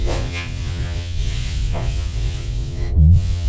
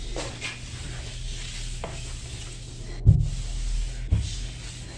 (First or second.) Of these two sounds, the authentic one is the second